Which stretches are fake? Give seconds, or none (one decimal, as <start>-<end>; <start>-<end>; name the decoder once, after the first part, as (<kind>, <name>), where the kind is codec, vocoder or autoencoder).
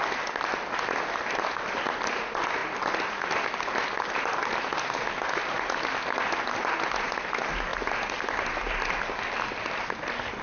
none